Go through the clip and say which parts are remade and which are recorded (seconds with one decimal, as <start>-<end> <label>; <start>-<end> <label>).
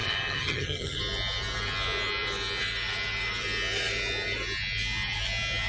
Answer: 0.0-1.0 remade; 1.0-5.7 recorded